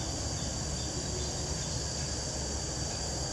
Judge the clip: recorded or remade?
recorded